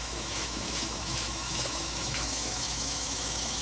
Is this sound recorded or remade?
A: remade